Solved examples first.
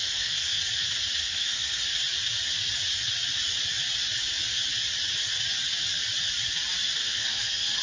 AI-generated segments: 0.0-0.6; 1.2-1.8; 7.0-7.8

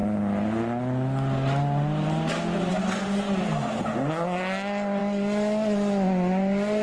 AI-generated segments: none

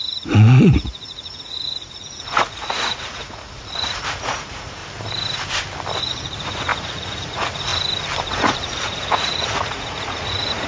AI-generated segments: 0.0-4.8; 6.0-7.7; 8.3-10.7

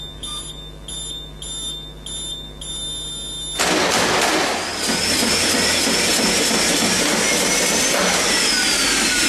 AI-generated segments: none

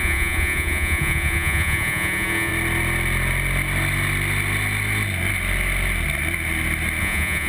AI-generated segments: 0.0-2.5; 7.0-7.5

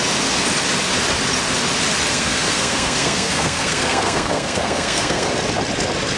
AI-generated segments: 2.1-5.3

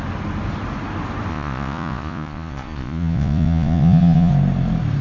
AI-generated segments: 1.3-4.3

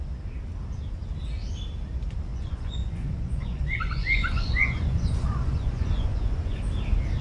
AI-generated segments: 2.3-6.6